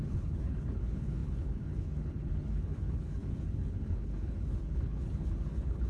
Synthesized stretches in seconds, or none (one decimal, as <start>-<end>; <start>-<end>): 0.0-5.9

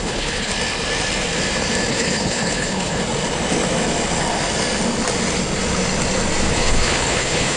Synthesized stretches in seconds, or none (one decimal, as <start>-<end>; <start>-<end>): 0.0-0.5; 1.9-3.0; 6.5-7.6

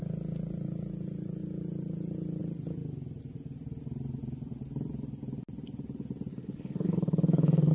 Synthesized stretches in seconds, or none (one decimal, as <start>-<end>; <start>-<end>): 6.3-7.7